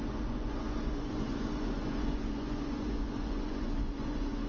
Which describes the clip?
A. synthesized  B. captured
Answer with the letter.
A